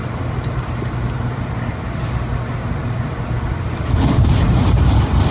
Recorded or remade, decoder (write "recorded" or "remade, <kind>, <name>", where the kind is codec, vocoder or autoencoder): recorded